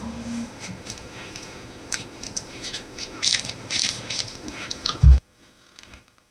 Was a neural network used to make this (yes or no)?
yes